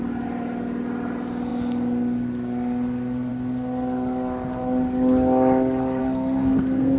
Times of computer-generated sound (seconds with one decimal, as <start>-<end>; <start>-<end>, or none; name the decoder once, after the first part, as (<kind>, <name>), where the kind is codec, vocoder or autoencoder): 6.0-7.0 (codec, SNAC)